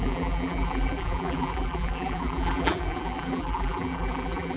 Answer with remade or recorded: remade